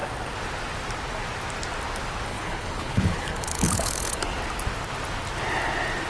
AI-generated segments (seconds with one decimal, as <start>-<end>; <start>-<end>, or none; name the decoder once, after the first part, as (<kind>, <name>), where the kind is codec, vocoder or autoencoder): 2.3-4.2 (codec, HILCodec)